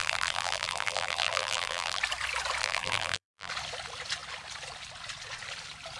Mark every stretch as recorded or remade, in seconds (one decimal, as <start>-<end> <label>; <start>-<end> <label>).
0.0-2.0 remade; 2.0-2.6 recorded; 2.6-3.5 remade; 3.5-6.0 recorded